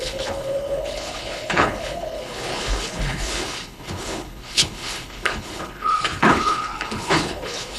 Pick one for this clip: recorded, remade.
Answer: remade